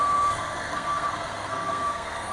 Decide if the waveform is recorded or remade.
remade